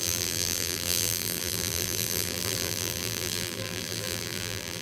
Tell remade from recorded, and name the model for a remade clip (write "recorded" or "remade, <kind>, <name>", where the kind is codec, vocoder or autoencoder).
remade, vocoder, BigVGAN v2